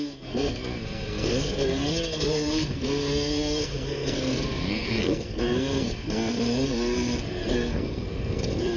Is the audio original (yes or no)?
no